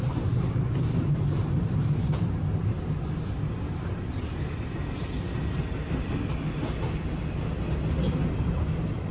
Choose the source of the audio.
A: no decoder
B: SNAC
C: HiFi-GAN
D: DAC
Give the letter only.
A